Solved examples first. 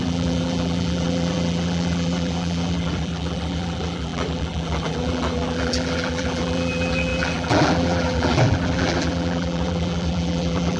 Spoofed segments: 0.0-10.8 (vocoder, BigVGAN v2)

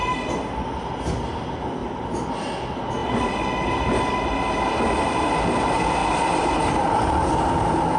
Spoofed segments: 1.8-2.3 (vocoder, BigVGAN v2); 6.0-7.3

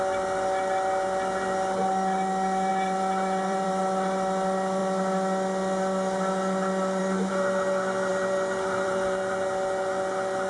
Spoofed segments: 2.7-3.8 (vocoder, BigVGAN v2); 8.1-9.3

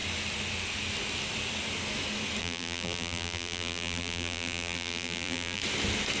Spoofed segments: 2.4-5.6 (vocoder, BigVGAN v2)